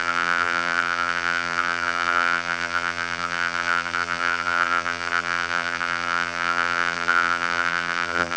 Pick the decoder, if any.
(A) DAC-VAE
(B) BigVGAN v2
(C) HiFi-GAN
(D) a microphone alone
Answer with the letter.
B